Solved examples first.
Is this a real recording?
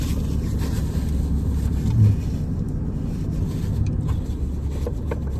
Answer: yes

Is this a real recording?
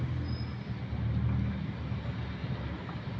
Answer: yes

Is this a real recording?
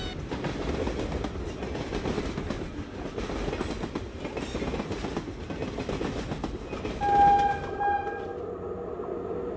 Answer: yes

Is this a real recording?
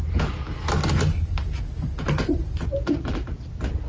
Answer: yes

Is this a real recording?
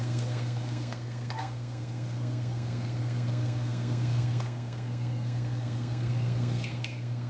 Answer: no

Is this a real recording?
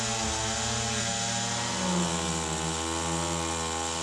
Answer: yes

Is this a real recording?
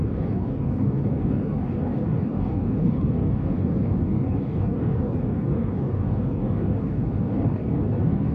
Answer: no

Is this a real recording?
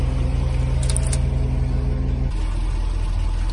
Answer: yes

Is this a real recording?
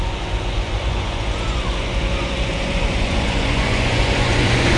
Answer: no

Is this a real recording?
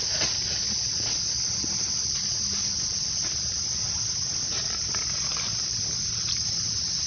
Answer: yes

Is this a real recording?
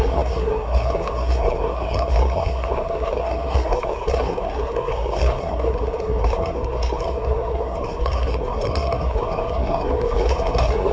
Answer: no